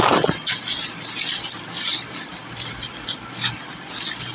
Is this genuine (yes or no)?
yes